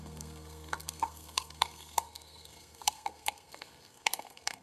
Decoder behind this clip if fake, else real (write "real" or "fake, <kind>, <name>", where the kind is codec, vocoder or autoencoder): fake, codec, SNAC